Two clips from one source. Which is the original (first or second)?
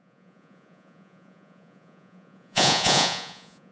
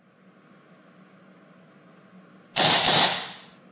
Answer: second